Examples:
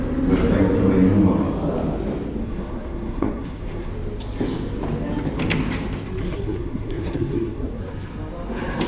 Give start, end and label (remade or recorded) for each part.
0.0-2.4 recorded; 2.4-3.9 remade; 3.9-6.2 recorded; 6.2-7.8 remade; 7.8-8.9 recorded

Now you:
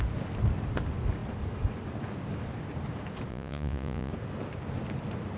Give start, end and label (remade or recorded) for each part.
0.0-3.3 recorded; 3.3-4.1 remade; 4.1-5.4 recorded

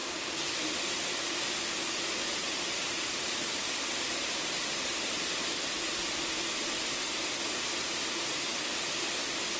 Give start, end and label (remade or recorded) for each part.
0.0-2.4 recorded; 2.4-3.4 remade; 3.4-4.2 recorded; 4.2-5.8 remade; 5.8-9.6 recorded

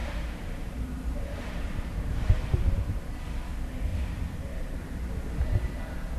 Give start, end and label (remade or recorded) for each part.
0.0-3.1 remade; 3.1-3.9 recorded; 3.9-5.1 remade; 5.1-6.2 recorded

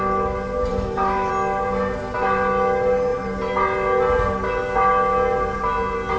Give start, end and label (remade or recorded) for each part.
0.0-0.7 recorded; 0.7-1.3 remade; 1.3-6.2 recorded

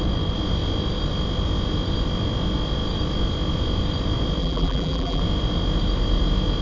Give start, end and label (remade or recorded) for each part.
0.0-4.4 recorded; 4.4-5.2 remade; 5.2-6.6 recorded

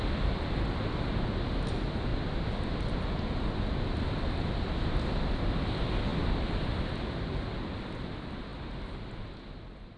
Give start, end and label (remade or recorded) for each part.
0.0-2.1 recorded; 2.1-5.5 remade; 5.5-6.1 recorded; 6.1-6.8 remade; 6.8-10.0 recorded